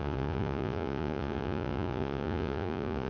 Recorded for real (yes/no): no